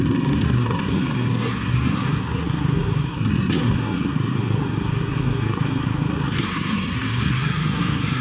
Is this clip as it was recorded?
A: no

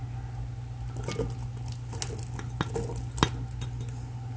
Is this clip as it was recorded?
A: yes